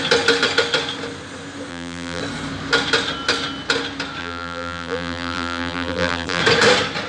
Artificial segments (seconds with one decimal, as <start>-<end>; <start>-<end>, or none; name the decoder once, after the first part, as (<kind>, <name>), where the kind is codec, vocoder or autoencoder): 1.7-2.2 (vocoder, BigVGAN v2); 4.2-6.4